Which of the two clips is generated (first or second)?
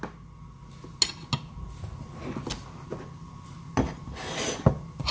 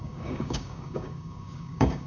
second